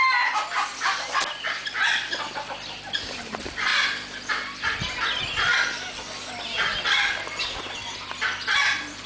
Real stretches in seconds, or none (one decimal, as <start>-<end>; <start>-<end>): 0.0-9.1